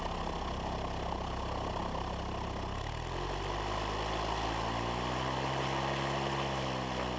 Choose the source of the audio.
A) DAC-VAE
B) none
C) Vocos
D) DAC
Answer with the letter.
B